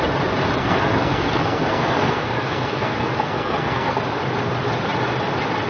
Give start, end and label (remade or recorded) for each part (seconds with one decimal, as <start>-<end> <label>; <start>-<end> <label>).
0.0-0.6 recorded; 0.6-4.0 remade; 4.0-5.7 recorded